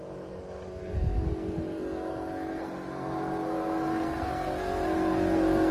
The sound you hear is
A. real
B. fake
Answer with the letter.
B